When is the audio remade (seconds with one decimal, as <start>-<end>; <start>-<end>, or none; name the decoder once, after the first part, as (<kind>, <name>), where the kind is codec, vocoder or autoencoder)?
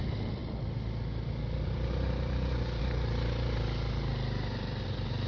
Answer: none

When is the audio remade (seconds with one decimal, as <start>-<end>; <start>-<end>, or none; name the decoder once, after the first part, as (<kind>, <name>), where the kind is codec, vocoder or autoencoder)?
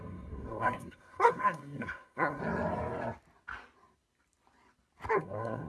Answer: 0.0-2.4 (codec, SNAC); 5.1-5.7